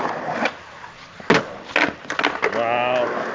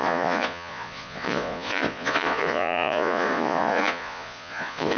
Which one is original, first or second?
first